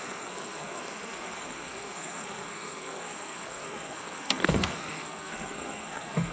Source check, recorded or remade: remade